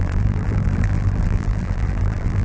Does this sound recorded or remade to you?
remade